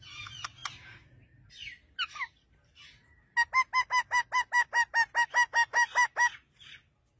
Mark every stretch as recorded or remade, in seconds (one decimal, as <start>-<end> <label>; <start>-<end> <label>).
0.0-7.2 recorded